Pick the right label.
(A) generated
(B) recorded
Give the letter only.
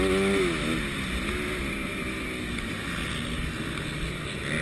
B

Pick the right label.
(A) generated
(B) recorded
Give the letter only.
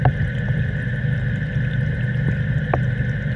B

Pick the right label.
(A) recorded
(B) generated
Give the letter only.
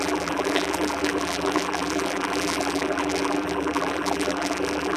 B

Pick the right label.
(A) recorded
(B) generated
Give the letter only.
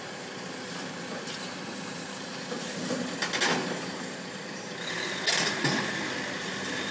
A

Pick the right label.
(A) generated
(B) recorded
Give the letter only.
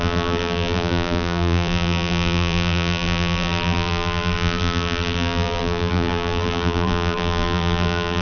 A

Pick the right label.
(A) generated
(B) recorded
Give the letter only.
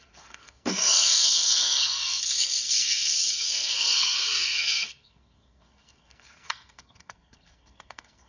A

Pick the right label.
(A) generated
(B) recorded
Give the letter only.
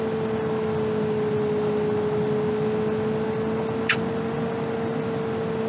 B